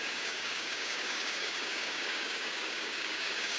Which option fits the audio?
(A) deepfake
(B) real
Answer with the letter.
A